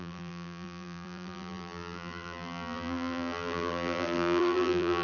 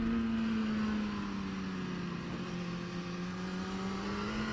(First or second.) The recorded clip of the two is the second